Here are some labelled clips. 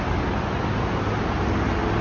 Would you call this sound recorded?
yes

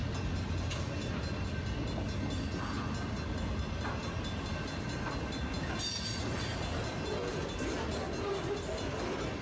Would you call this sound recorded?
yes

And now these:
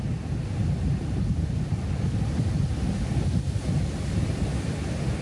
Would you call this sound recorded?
yes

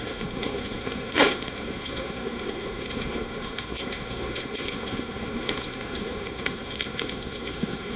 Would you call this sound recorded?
no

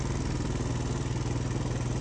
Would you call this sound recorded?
yes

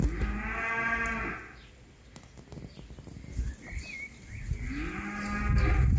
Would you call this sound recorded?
yes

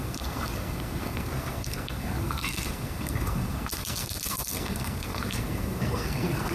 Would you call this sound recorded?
no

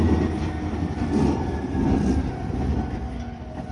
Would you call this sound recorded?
yes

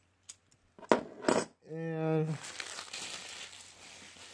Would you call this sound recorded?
yes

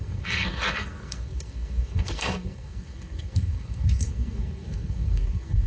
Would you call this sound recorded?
no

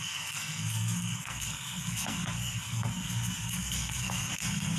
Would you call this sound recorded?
no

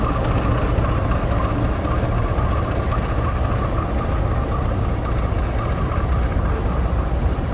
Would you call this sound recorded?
yes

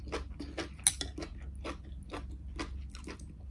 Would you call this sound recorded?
yes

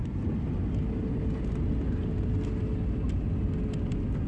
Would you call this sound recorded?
yes